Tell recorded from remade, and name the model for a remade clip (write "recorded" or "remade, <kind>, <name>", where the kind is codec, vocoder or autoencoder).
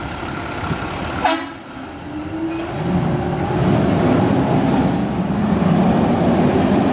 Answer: recorded